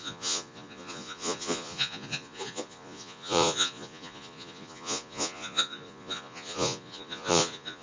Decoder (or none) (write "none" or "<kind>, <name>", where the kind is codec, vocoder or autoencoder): vocoder, Vocos